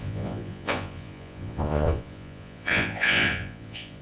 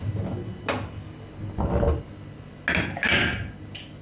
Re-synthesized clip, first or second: first